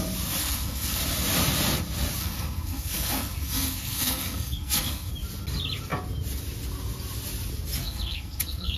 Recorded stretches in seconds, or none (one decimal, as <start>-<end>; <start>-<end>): 0.0-0.4; 1.0-2.2; 5.1-7.8